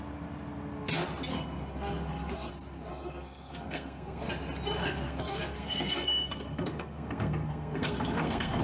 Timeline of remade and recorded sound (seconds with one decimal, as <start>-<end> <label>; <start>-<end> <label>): 0.0-1.3 recorded; 1.3-2.5 remade; 2.5-2.9 recorded; 2.9-4.3 remade; 4.3-4.8 recorded; 4.8-8.6 remade